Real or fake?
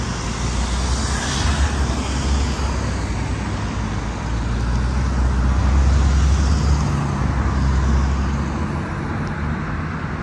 real